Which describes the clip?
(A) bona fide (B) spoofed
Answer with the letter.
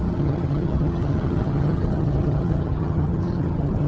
B